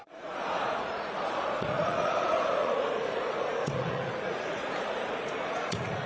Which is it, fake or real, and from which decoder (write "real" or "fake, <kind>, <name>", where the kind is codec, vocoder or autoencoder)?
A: fake, vocoder, Vocos